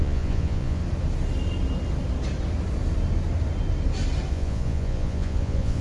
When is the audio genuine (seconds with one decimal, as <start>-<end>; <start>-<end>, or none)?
0.8-4.3